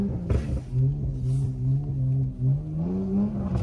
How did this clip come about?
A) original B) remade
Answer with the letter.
A